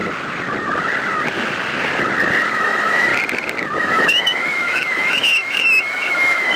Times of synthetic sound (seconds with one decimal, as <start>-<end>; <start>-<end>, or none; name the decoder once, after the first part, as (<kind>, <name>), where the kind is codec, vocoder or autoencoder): 2.5-3.1 (autoencoder, DAC-VAE); 3.8-6.6